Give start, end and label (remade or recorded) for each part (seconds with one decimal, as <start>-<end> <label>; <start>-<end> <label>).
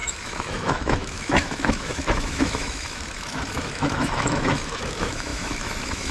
0.0-6.1 remade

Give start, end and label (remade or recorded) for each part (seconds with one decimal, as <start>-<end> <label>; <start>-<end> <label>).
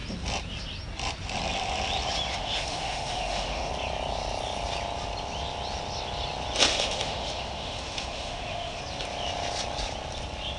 0.0-2.3 recorded; 2.3-3.7 remade; 3.7-6.7 recorded; 6.7-8.8 remade; 8.8-10.6 recorded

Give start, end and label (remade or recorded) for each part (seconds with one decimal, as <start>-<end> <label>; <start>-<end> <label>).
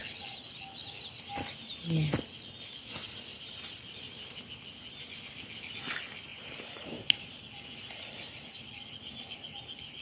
0.0-3.3 recorded; 3.3-4.5 remade; 4.5-6.3 recorded; 6.3-7.4 remade; 7.4-10.0 recorded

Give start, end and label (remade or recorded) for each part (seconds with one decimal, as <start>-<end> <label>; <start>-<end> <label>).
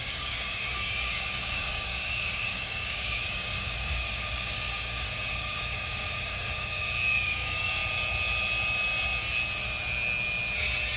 0.0-7.8 remade; 7.8-11.0 recorded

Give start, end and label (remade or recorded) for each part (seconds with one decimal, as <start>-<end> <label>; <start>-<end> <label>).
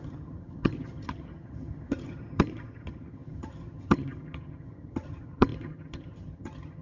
0.0-6.8 remade